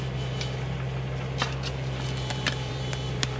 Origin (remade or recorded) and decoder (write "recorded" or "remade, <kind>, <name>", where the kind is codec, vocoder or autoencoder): remade, vocoder, BigVGAN v2